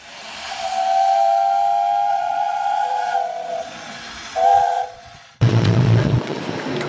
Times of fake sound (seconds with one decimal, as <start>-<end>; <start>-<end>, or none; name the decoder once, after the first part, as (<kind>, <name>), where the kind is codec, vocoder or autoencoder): 2.1-4.0 (vocoder, Vocos); 4.5-6.4